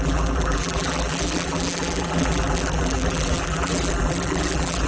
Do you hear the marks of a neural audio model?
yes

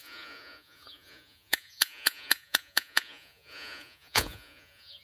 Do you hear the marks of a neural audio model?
yes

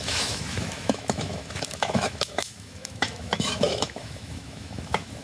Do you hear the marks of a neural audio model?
yes